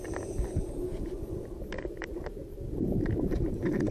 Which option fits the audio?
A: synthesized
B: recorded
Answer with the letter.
B